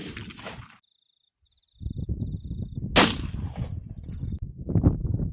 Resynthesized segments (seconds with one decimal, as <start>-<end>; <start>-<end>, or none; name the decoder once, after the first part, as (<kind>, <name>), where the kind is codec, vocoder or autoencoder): none